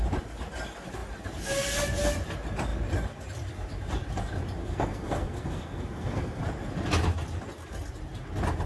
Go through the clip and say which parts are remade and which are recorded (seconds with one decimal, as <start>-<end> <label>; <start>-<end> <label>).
0.0-4.6 recorded; 4.6-6.4 remade; 6.4-8.7 recorded